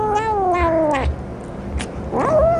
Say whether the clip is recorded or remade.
recorded